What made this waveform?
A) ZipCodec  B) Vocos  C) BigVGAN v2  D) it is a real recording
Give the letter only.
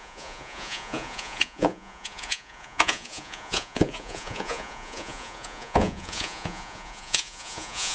B